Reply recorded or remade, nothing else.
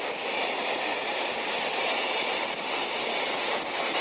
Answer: recorded